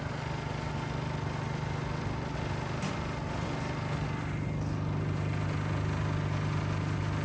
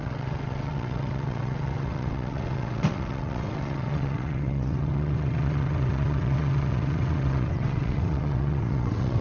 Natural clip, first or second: first